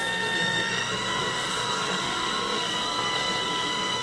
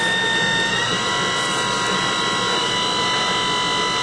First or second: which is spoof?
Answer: first